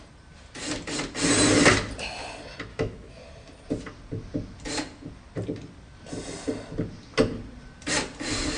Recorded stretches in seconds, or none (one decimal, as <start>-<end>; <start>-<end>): 0.0-2.7; 3.2-8.6